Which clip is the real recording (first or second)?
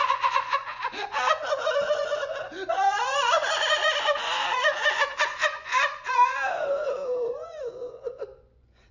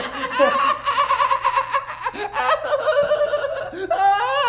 second